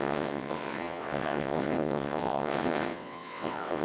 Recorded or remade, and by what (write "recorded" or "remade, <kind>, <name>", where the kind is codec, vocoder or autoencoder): remade, vocoder, WaveNeXt